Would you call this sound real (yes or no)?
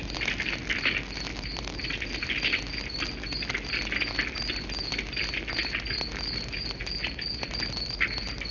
yes